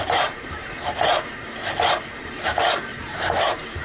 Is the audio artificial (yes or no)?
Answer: yes